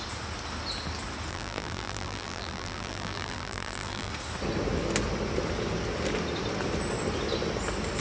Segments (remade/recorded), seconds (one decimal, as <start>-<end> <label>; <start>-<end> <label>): 0.0-1.3 recorded; 1.3-4.1 remade; 4.1-8.0 recorded